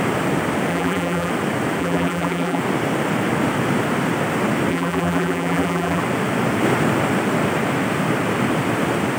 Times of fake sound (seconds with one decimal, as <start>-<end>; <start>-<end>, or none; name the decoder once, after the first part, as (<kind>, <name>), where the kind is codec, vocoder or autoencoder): 0.7-1.3 (vocoder, BigVGAN v2); 1.8-2.6; 4.7-6.0